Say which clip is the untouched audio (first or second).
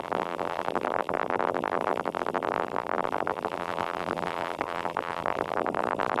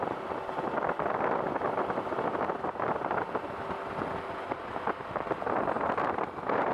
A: second